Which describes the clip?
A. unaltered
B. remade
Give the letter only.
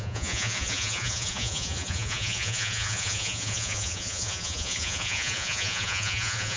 B